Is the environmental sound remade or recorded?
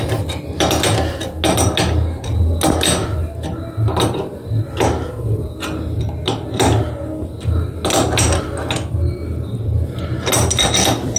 recorded